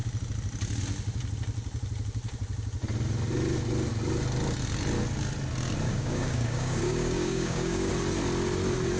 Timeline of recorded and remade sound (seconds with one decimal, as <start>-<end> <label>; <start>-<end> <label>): 0.0-5.9 recorded; 5.9-7.9 remade; 7.9-9.0 recorded